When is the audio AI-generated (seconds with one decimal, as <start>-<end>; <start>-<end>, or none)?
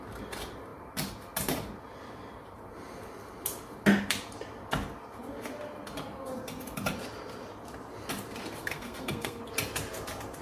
8.6-9.4